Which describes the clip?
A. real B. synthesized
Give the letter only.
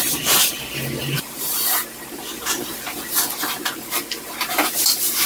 B